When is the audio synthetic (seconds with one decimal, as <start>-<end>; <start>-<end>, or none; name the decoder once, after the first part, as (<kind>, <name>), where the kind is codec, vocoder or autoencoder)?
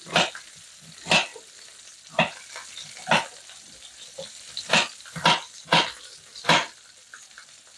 none